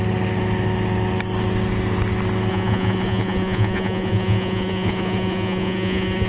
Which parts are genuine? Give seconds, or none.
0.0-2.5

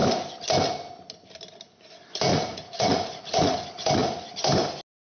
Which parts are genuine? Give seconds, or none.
0.0-2.3; 3.6-5.0